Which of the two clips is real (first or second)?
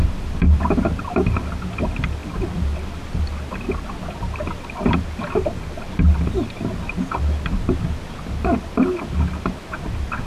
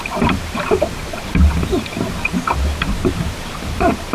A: first